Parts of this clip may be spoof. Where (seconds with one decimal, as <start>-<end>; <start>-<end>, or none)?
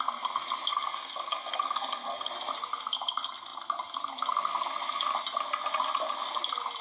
0.7-2.3